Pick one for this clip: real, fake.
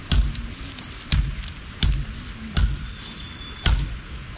real